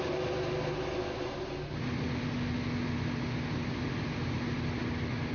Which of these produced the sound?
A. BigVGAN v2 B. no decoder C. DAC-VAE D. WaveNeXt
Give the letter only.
B